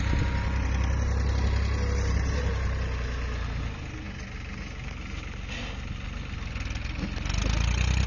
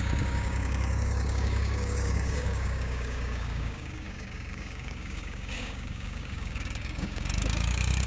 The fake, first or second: second